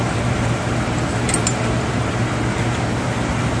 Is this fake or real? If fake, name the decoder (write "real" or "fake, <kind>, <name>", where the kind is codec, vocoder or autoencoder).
real